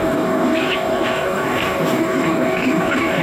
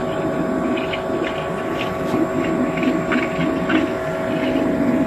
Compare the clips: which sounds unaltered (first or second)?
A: second